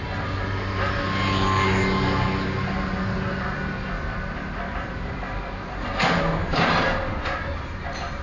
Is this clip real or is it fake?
real